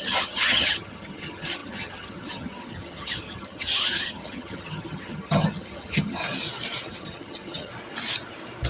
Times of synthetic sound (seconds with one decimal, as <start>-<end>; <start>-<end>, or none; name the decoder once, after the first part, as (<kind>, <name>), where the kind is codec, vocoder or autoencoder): 0.0-6.2 (vocoder, HiFi-GAN); 6.9-7.7